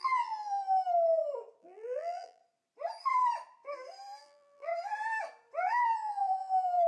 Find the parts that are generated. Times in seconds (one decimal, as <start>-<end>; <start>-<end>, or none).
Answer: 0.0-0.6; 1.6-2.4; 4.2-4.7; 5.7-6.9